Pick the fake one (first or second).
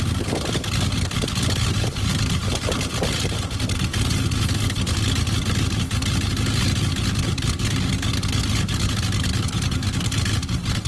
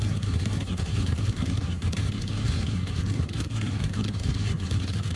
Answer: second